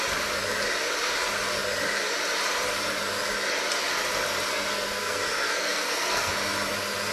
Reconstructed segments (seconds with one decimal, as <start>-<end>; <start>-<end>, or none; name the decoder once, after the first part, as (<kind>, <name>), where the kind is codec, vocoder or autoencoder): 4.5-6.3 (codec, SNAC)